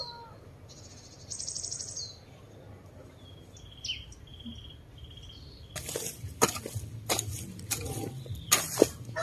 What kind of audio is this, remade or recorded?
recorded